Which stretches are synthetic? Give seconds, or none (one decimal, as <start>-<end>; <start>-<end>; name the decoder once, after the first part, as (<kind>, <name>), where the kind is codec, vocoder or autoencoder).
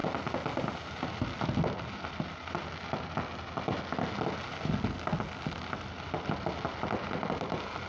none